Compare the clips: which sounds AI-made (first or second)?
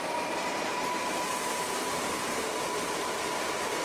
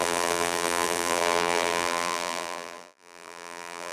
second